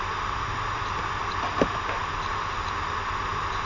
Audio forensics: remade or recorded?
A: recorded